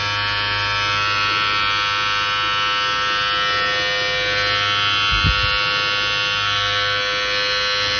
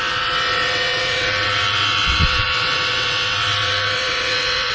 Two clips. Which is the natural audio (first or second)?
first